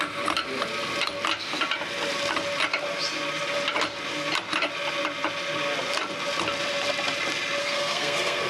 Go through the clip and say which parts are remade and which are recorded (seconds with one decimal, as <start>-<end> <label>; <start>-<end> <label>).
0.0-7.6 recorded; 7.6-8.5 remade